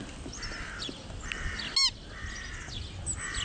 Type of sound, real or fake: real